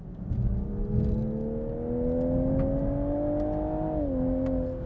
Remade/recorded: recorded